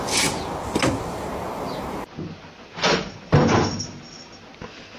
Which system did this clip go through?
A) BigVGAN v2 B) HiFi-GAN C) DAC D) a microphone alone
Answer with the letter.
D